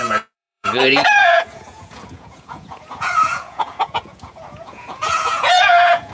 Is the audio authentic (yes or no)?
no